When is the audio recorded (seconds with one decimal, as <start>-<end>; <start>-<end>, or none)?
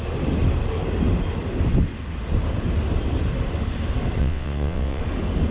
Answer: 0.0-4.2; 5.0-5.5